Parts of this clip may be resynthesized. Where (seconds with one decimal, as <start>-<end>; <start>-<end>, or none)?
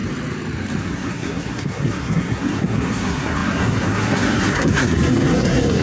0.8-5.8